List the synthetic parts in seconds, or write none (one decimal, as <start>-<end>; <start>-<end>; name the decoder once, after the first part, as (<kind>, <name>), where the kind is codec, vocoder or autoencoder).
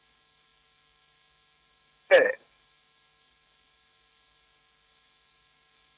0.0-6.0 (codec, DAC)